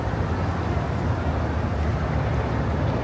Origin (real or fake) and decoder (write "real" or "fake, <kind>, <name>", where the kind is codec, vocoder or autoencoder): real